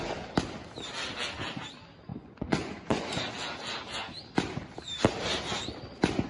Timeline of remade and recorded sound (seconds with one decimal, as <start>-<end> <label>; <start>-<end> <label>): 0.0-2.1 recorded; 2.1-3.2 remade; 3.2-6.3 recorded